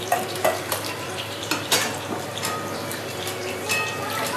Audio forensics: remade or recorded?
remade